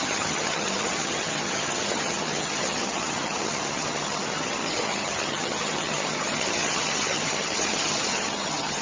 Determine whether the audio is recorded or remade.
remade